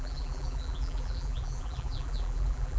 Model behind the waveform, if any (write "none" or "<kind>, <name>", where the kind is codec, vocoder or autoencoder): vocoder, BigVGAN v2